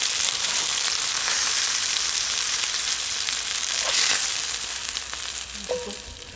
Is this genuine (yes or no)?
no